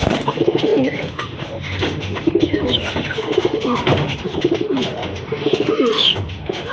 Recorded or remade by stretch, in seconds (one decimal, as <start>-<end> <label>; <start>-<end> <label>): 0.0-6.7 remade